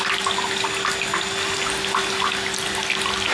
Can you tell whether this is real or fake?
real